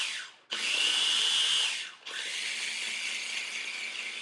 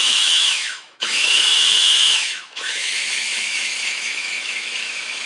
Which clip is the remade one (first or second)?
second